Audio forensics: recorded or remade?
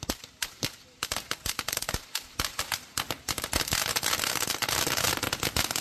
recorded